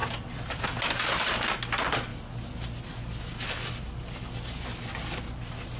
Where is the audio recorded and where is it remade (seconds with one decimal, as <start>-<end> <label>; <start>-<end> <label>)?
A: 0.0-5.8 recorded